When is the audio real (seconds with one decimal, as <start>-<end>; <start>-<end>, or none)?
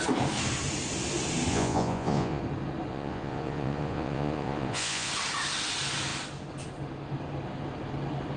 0.0-1.5; 2.4-2.9; 5.1-8.4